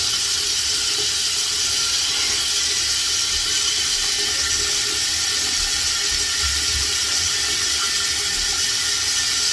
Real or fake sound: real